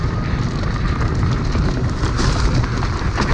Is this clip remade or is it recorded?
recorded